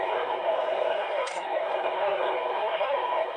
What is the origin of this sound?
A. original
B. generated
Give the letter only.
B